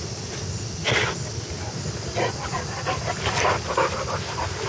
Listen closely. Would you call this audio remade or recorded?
recorded